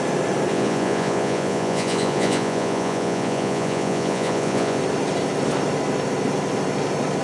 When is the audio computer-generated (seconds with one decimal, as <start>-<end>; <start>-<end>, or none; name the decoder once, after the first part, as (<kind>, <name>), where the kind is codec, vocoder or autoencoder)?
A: 0.5-4.8 (vocoder, Vocos)